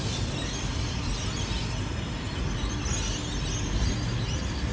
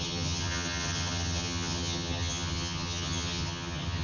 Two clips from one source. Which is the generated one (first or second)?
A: second